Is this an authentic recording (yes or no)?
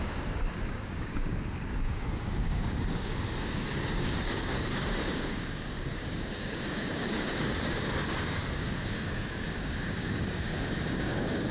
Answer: no